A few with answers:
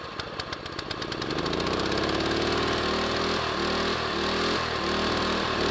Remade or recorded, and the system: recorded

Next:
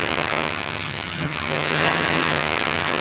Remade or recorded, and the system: remade, vocoder, HiFi-GAN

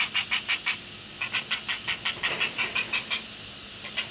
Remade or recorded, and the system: recorded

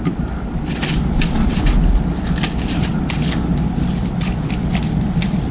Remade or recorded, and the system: recorded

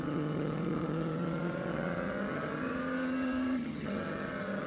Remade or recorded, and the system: remade, vocoder, HiFi-GAN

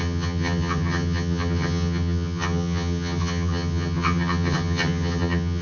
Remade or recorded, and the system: remade, vocoder, HiFi-GAN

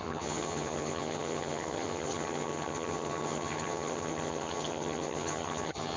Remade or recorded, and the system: remade, vocoder, HiFi-GAN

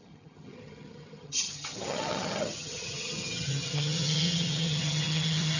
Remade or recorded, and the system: remade, vocoder, HiFi-GAN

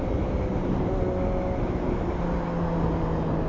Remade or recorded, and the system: recorded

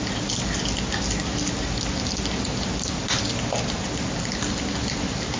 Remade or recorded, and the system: recorded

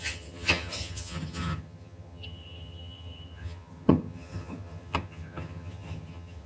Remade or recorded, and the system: remade, vocoder, HiFi-GAN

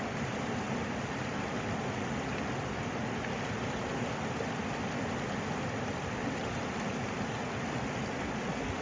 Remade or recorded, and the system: recorded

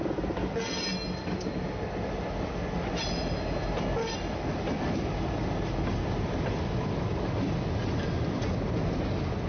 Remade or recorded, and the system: recorded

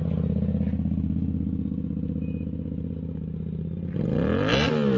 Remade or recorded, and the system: recorded